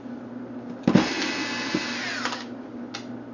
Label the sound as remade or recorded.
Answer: recorded